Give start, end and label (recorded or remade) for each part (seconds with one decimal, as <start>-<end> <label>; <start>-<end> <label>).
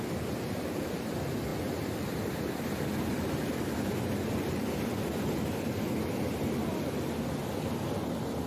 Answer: 0.0-8.5 recorded